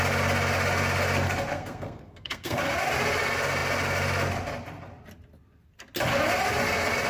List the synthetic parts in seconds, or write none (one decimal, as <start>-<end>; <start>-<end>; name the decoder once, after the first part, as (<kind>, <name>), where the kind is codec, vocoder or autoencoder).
1.5-2.6 (codec, SNAC)